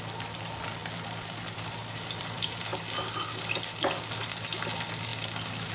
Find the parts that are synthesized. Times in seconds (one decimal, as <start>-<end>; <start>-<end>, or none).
none